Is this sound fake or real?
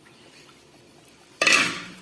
fake